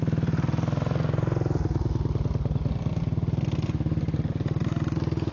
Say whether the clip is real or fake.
real